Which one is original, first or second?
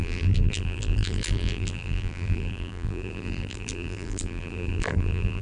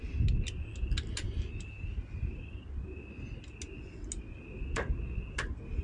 second